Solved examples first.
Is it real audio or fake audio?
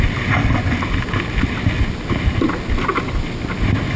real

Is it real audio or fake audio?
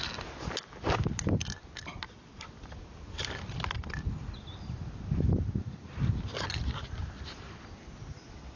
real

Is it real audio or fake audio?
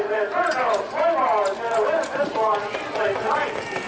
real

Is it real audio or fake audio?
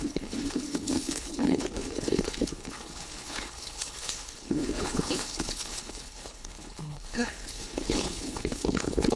fake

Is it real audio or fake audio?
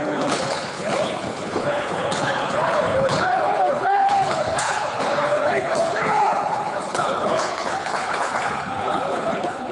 fake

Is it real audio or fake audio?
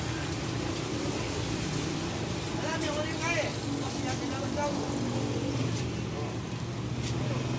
real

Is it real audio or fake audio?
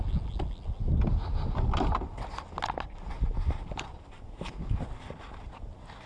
real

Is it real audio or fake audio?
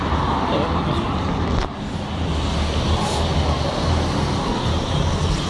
real